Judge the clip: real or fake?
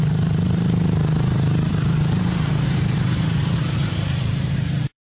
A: fake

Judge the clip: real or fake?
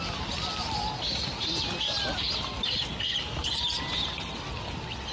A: real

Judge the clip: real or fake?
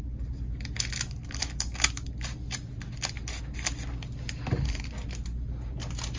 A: real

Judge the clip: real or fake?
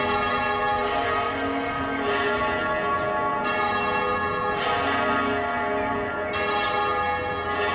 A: real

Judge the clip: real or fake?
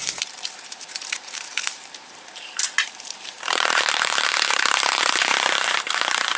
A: fake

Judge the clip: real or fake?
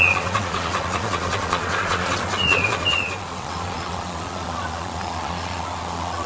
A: fake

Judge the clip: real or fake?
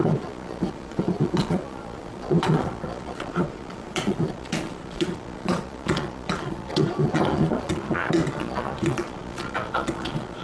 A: fake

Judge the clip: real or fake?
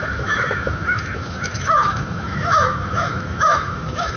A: fake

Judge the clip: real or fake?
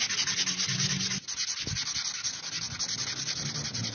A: real